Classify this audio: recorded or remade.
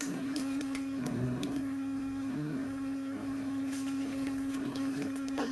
remade